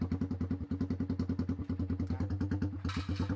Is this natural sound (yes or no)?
yes